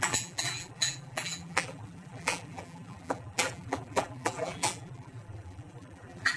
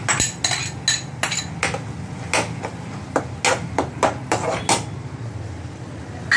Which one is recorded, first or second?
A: second